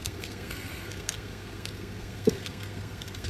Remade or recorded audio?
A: remade